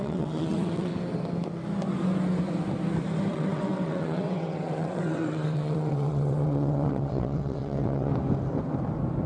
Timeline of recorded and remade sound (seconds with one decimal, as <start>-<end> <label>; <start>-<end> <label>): 0.0-0.9 remade; 0.9-3.3 recorded; 3.3-8.1 remade; 8.1-9.3 recorded

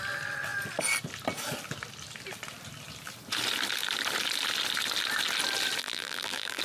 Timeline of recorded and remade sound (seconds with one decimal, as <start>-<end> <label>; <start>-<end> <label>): 0.0-5.8 recorded; 5.8-6.6 remade

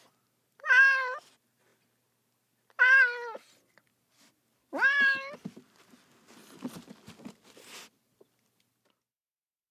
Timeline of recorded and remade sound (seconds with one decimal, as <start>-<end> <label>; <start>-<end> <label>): 0.0-9.7 recorded

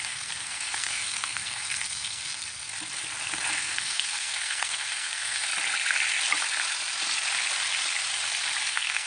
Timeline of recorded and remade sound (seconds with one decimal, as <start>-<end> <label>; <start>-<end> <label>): 0.0-2.7 remade; 2.7-3.5 recorded; 3.5-5.5 remade; 5.5-8.7 recorded; 8.7-9.1 remade

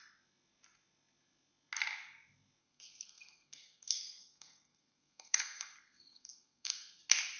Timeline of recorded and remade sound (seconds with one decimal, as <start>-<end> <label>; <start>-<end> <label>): 0.0-2.6 recorded; 2.6-7.0 remade; 7.0-7.4 recorded

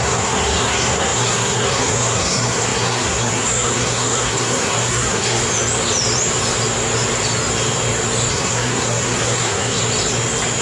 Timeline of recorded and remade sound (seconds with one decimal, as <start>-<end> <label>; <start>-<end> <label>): 0.0-5.4 remade; 5.4-8.3 recorded; 8.3-9.8 remade; 9.8-10.6 recorded